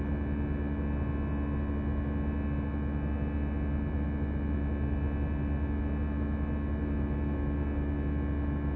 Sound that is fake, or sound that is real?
real